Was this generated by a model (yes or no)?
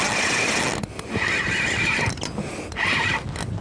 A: no